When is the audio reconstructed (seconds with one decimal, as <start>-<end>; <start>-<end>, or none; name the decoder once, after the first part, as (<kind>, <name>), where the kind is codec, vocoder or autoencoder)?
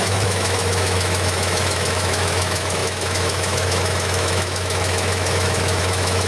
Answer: 0.0-6.3 (autoencoder, DAC-VAE)